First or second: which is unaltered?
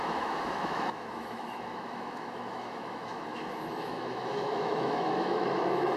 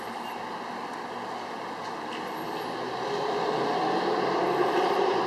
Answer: second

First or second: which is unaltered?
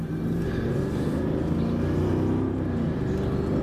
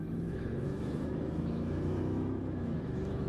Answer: first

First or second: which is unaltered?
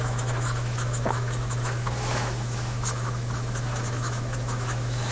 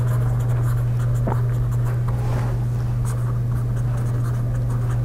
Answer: second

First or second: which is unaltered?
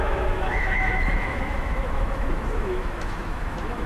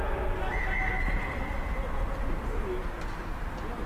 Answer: second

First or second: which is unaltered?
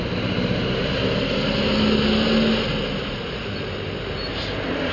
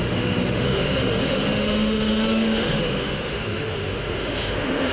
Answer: first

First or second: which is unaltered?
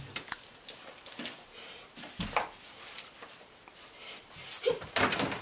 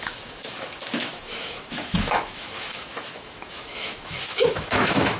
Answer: first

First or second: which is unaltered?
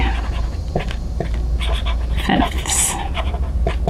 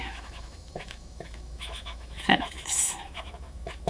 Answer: first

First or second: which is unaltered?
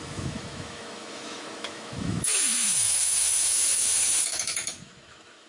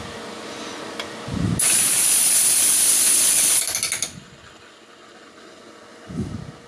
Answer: second